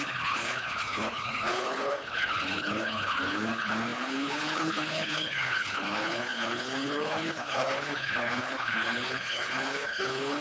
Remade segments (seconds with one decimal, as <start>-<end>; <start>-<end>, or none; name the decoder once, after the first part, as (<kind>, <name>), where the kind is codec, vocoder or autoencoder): 0.0-10.4 (codec, HILCodec)